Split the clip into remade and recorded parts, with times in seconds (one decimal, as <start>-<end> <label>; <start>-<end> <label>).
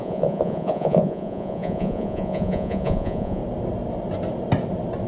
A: 0.0-3.4 remade; 3.4-5.1 recorded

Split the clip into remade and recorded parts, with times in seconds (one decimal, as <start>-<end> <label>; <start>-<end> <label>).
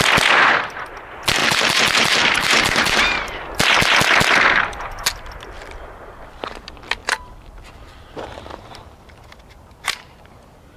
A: 0.0-1.4 recorded; 1.4-3.0 remade; 3.0-7.0 recorded; 7.0-10.4 remade; 10.4-10.8 recorded